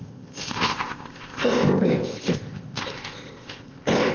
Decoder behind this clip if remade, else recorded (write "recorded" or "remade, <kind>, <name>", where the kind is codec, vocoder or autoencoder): remade, codec, ZipCodec